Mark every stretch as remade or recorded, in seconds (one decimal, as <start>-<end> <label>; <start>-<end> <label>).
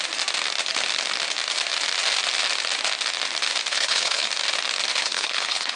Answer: 0.0-3.7 recorded; 3.7-4.3 remade; 4.3-5.0 recorded; 5.0-5.8 remade